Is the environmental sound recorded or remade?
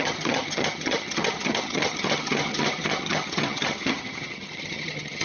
remade